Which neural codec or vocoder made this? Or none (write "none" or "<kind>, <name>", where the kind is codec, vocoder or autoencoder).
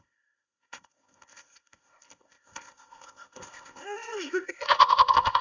codec, ZipCodec